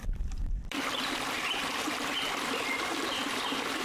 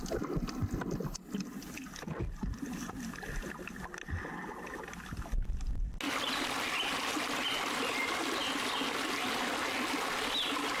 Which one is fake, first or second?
first